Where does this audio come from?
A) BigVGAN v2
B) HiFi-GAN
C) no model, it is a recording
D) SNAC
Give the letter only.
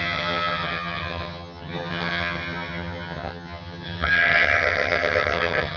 B